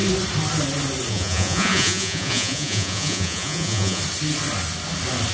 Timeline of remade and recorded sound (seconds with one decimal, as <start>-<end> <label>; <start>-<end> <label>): 0.0-1.1 recorded; 1.1-4.0 remade; 4.0-5.3 recorded